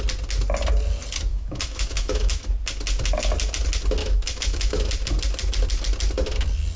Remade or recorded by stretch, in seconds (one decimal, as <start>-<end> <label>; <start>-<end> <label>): 0.0-1.3 recorded; 1.3-2.4 remade; 2.4-4.0 recorded; 4.0-4.9 remade; 4.9-6.8 recorded